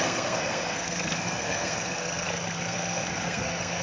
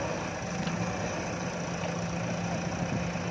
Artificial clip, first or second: first